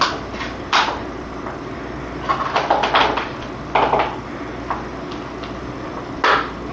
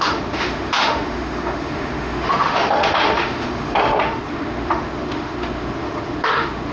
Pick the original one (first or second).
first